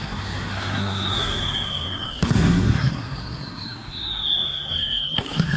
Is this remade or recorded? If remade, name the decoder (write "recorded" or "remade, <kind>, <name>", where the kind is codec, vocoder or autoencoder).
remade, codec, SNAC